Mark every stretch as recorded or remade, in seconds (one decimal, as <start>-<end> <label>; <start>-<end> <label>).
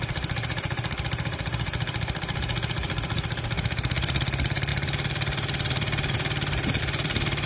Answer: 0.0-7.5 recorded